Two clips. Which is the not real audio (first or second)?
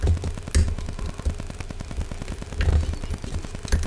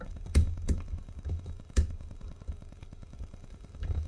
second